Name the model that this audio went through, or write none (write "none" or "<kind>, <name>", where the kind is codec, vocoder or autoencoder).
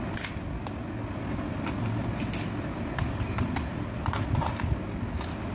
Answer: none